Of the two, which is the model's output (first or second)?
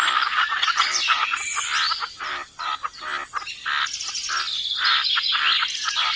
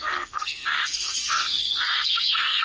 second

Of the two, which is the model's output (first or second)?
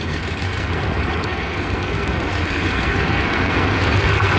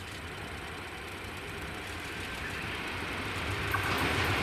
first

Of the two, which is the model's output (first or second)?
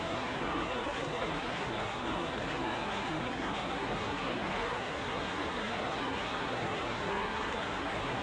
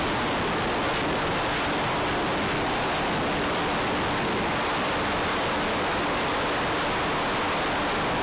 first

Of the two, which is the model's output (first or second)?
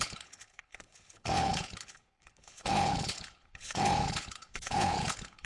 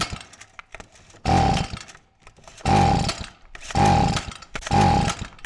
first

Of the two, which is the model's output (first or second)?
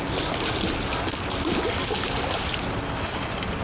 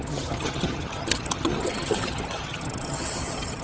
second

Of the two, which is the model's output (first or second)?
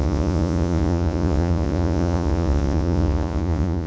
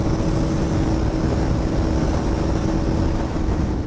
first